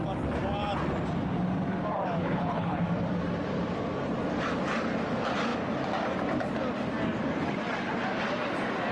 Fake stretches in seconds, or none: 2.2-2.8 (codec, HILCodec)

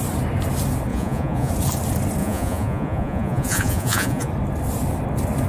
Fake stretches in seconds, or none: 0.9-1.5 (vocoder, Vocos); 2.2-4.3

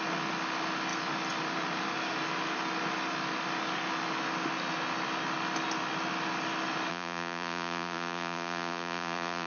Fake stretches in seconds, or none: 6.9-9.5 (vocoder, Vocos)